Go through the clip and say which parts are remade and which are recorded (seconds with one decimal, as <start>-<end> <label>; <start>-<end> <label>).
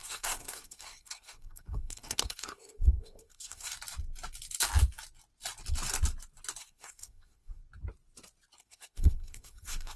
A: 0.0-3.7 remade; 3.7-6.6 recorded; 6.6-7.6 remade; 7.6-8.6 recorded; 8.6-10.0 remade